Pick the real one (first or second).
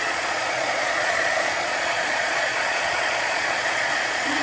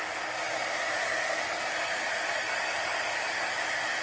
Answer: second